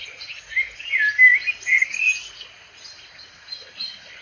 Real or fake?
real